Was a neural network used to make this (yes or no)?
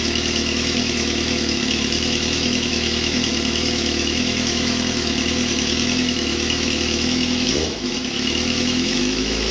yes